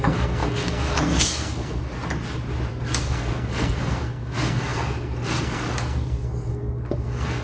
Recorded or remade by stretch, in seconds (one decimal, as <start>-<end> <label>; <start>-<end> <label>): 0.0-1.9 remade; 1.9-2.7 recorded; 2.7-7.4 remade